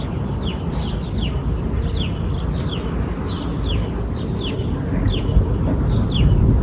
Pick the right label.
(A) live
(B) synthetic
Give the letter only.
A